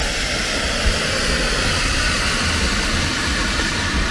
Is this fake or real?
real